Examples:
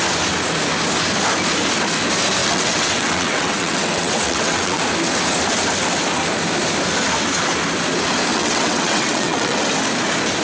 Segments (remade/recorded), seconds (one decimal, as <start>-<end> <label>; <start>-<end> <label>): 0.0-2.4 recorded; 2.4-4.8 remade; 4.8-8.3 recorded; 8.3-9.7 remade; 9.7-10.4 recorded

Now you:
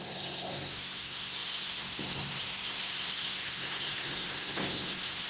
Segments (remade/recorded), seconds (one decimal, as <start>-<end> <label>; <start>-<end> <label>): 0.0-5.3 remade

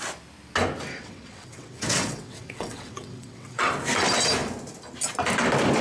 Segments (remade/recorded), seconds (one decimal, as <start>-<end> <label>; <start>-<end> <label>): 0.0-0.9 recorded; 0.9-3.7 remade; 3.7-5.8 recorded

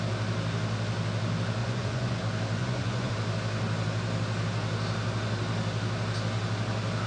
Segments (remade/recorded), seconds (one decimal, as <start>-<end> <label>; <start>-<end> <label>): 0.0-1.6 recorded; 1.6-2.2 remade; 2.2-2.6 recorded; 2.6-3.1 remade; 3.1-7.1 recorded

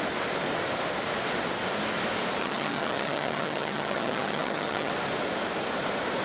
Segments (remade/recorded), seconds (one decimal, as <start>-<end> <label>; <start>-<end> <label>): 0.0-2.4 recorded; 2.4-4.9 remade; 4.9-6.2 recorded